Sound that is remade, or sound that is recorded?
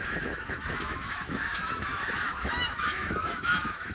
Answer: remade